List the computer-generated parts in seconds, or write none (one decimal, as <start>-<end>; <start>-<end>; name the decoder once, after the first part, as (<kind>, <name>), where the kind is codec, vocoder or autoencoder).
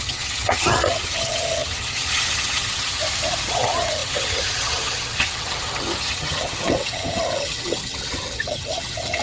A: 0.0-3.0 (vocoder, HiFi-GAN); 3.5-9.2